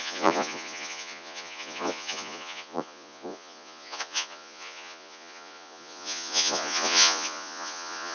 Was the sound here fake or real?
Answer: fake